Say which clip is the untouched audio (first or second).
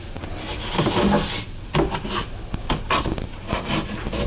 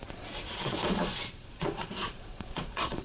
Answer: first